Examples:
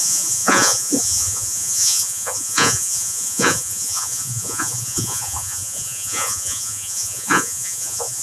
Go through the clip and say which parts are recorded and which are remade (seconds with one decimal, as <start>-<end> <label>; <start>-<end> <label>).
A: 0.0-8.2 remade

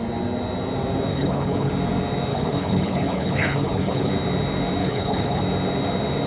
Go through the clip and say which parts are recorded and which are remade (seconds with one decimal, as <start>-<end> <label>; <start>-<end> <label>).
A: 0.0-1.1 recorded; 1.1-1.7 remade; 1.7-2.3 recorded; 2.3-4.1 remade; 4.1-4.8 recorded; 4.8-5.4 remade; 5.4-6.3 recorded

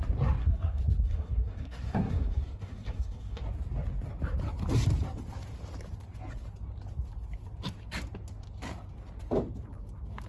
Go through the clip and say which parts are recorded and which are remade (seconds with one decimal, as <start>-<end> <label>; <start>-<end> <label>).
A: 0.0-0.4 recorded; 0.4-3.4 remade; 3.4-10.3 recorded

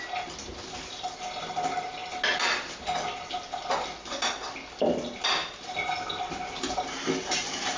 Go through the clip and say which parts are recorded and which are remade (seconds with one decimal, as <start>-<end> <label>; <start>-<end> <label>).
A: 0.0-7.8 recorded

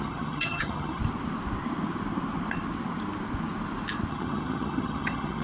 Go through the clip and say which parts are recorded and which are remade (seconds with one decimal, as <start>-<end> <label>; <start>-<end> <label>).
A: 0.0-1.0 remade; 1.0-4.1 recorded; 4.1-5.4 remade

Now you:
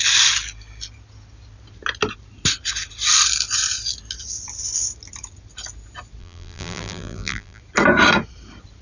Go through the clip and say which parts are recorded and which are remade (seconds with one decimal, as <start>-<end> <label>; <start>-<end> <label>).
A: 0.0-6.2 recorded; 6.2-7.6 remade; 7.6-8.8 recorded